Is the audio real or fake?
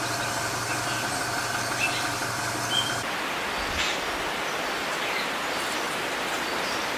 real